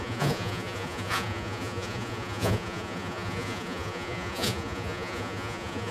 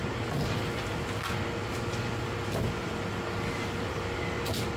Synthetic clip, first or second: first